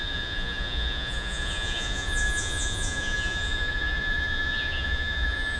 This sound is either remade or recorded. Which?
remade